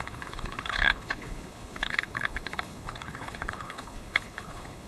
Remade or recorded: remade